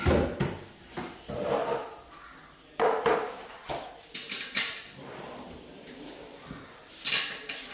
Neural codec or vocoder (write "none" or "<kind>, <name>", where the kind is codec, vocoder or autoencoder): none